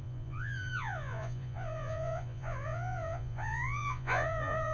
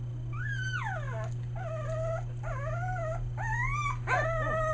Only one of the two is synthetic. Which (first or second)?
first